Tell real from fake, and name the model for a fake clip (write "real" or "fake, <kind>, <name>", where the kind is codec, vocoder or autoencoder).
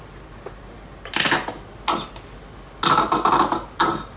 real